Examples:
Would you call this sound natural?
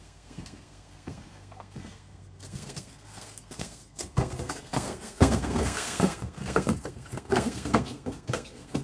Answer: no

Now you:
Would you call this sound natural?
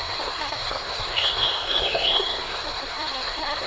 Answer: no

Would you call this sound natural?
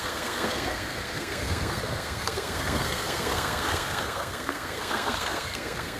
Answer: no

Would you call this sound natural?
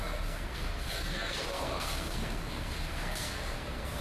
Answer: no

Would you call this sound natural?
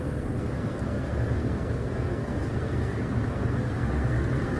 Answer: no